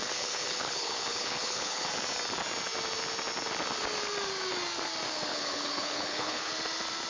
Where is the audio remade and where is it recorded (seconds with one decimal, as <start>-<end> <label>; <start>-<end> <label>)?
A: 0.0-1.9 remade; 1.9-5.3 recorded; 5.3-6.5 remade; 6.5-7.1 recorded